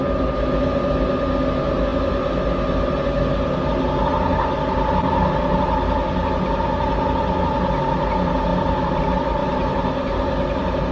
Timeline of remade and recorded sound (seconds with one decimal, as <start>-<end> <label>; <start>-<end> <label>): 0.0-8.5 recorded; 8.5-9.0 remade; 9.0-9.4 recorded; 9.4-10.2 remade; 10.2-10.9 recorded